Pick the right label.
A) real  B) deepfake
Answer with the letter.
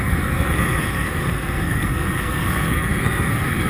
B